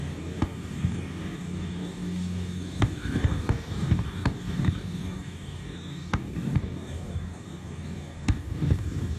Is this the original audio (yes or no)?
no